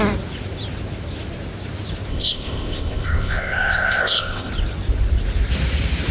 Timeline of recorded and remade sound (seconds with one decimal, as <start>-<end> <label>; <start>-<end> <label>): 0.0-2.1 recorded; 2.1-4.5 remade; 4.5-6.1 recorded